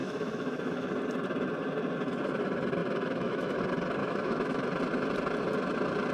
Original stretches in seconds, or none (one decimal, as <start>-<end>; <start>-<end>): 0.9-2.8; 3.6-4.0; 4.7-6.1